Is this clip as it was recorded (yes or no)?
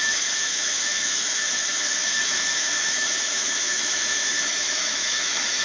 no